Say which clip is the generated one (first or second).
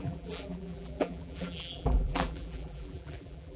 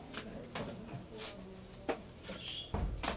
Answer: first